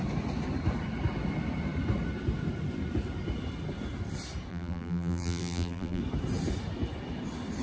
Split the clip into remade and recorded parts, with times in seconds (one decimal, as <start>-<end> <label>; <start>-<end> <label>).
0.0-4.5 recorded; 4.5-6.0 remade; 6.0-7.6 recorded